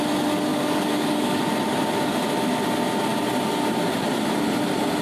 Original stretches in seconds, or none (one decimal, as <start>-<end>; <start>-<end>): 0.0-0.5; 1.4-5.0